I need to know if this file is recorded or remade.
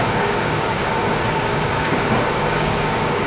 remade